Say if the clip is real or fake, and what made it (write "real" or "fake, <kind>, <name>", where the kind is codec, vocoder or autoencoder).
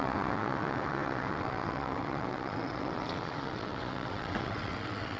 fake, vocoder, WaveNeXt